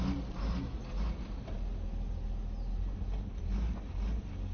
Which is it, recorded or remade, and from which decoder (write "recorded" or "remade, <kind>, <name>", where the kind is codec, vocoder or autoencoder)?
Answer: recorded